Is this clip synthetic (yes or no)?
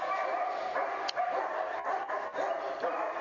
no